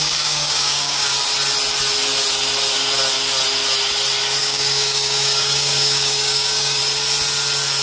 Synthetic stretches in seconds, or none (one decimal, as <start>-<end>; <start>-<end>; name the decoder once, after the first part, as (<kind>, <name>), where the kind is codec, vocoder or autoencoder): 0.0-1.1 (codec, DAC); 4.4-6.8